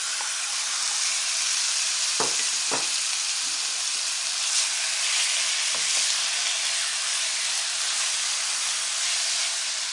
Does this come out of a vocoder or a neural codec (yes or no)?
no